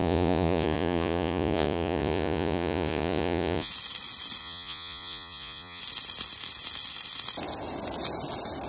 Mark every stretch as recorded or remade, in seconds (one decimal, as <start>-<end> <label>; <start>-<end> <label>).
0.0-3.7 remade; 3.7-4.4 recorded; 4.4-5.8 remade; 5.8-8.7 recorded